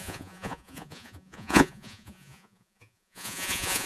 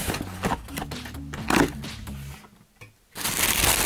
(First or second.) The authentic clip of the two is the second